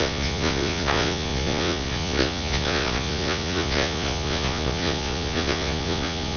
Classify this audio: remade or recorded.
remade